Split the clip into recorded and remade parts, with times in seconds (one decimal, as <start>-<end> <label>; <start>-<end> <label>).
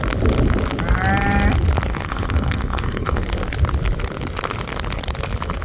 0.0-1.9 recorded; 1.9-3.2 remade; 3.2-5.6 recorded